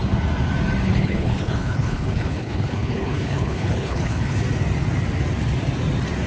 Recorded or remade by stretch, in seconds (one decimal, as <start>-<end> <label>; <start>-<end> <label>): 0.0-0.9 recorded; 0.9-4.4 remade; 4.4-6.3 recorded